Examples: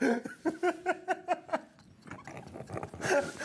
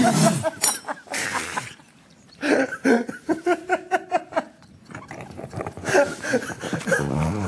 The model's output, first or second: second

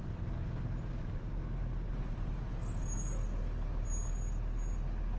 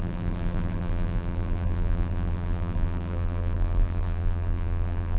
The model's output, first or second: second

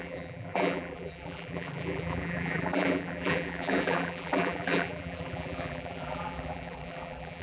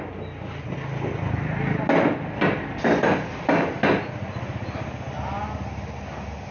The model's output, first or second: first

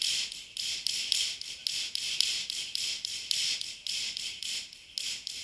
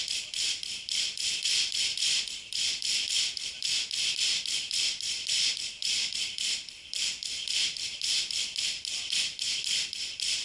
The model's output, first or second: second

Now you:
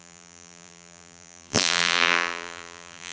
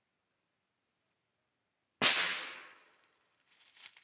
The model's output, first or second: first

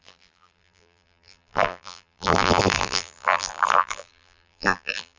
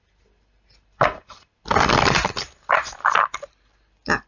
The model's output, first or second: first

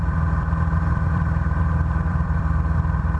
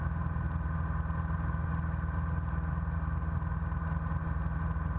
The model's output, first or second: first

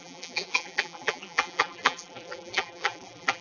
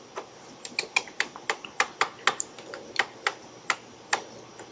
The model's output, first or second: first